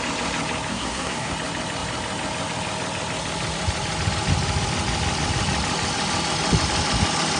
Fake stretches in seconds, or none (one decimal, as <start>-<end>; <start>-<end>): 0.7-1.3